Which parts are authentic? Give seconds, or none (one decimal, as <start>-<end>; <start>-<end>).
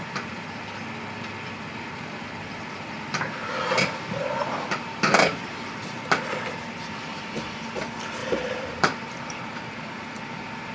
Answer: 0.0-8.2; 9.2-10.7